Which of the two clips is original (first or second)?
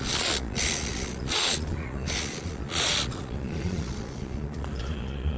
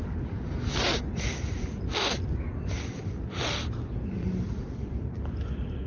second